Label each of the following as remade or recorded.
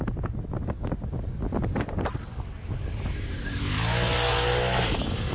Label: recorded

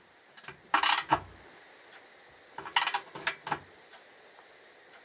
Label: recorded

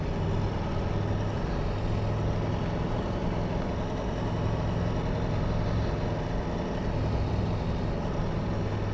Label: recorded